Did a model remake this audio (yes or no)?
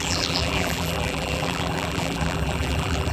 yes